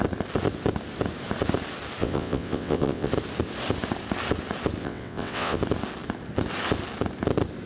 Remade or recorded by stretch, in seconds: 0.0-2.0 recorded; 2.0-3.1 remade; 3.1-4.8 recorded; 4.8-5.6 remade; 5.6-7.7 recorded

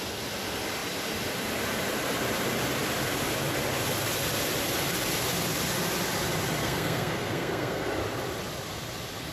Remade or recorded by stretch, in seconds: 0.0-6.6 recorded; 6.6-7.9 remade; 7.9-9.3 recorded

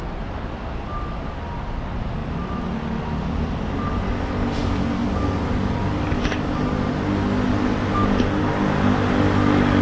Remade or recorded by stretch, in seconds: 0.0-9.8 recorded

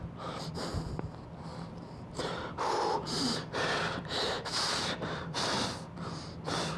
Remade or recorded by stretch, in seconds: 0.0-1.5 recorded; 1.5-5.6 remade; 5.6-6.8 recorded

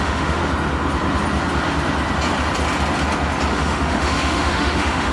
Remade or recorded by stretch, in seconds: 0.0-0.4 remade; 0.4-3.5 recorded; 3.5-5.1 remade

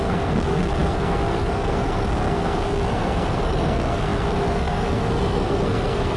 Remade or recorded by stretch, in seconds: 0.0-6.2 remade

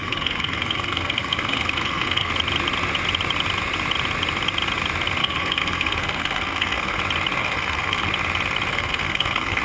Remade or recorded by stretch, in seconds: 0.0-2.3 remade; 2.3-5.2 recorded; 5.2-7.0 remade; 7.0-7.4 recorded; 7.4-8.1 remade; 8.1-8.7 recorded; 8.7-9.6 remade